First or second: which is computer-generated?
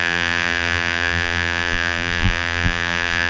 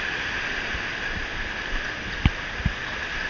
first